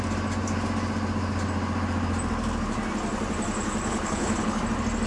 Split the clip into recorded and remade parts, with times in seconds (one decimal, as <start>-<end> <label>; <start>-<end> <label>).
0.0-3.9 recorded; 3.9-4.6 remade; 4.6-5.1 recorded